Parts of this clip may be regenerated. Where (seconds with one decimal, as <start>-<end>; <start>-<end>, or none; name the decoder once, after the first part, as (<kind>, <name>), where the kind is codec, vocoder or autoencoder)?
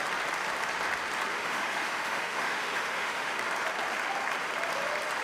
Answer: 1.3-3.4 (autoencoder, DAC-VAE)